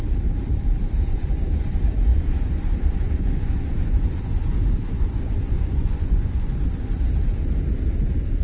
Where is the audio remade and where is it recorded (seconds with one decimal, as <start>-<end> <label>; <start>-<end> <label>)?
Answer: 0.0-1.1 recorded; 1.1-1.7 remade; 1.7-2.1 recorded; 2.1-6.5 remade; 6.5-8.4 recorded